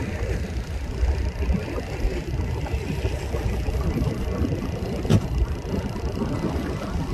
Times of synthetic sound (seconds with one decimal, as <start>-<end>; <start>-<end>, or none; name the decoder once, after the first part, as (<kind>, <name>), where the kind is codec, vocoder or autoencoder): 5.1-6.0 (vocoder, BigVGAN v2)